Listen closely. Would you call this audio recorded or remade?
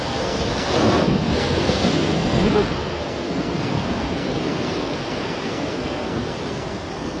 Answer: remade